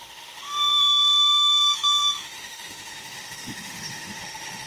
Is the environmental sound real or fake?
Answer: fake